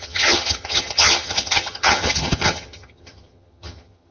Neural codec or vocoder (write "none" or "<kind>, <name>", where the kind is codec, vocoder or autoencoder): vocoder, HiFi-GAN